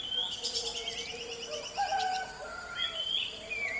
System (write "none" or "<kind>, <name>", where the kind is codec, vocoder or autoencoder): none